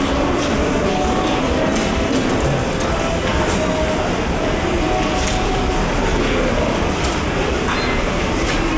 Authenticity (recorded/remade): recorded